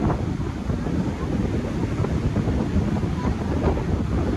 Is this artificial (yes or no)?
no